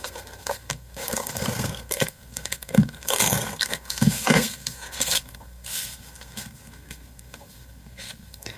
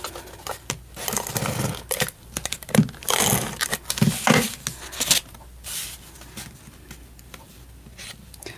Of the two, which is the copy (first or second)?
first